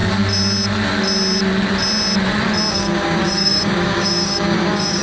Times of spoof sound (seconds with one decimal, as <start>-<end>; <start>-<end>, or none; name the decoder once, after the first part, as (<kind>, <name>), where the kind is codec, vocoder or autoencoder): 2.7-5.0 (codec, DAC)